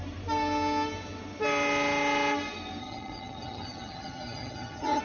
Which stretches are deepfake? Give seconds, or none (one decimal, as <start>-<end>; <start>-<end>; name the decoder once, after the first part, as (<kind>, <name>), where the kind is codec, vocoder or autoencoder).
2.8-5.0 (vocoder, HiFi-GAN)